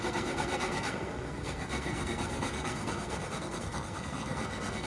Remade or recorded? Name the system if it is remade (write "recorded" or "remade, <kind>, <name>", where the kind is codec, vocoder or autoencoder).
remade, codec, SNAC